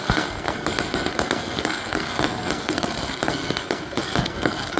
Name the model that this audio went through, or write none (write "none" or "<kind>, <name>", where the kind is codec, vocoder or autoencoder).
codec, SNAC